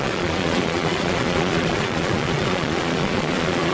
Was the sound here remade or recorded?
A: remade